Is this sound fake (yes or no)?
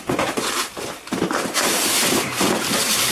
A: no